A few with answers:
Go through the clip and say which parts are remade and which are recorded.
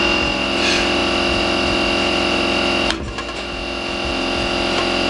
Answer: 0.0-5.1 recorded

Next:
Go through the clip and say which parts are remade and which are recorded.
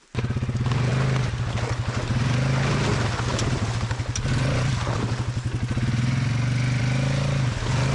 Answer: 0.0-7.9 recorded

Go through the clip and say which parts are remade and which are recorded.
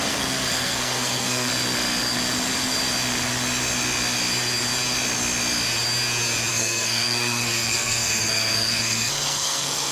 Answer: 0.0-1.5 remade; 1.5-6.5 recorded; 6.5-9.9 remade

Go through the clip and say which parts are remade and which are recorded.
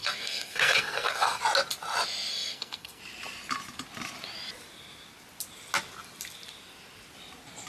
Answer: 0.0-1.4 remade; 1.4-2.3 recorded; 2.3-3.0 remade; 3.0-7.7 recorded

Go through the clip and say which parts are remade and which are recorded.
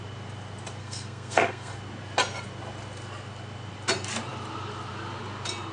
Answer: 0.0-0.8 recorded; 0.8-1.7 remade; 1.7-5.7 recorded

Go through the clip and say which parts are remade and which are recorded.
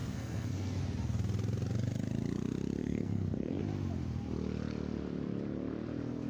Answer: 0.0-0.8 remade; 0.8-2.8 recorded; 2.8-3.6 remade; 3.6-6.3 recorded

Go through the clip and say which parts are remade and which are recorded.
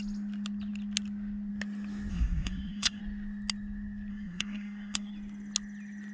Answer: 0.0-2.1 recorded; 2.1-3.0 remade; 3.0-4.1 recorded; 4.1-5.1 remade; 5.1-6.1 recorded